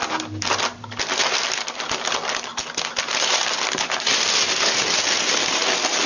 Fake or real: real